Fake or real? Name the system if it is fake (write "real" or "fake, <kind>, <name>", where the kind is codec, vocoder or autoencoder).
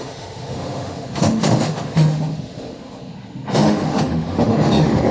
fake, autoencoder, DAC-VAE